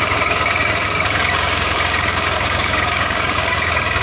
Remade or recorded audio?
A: remade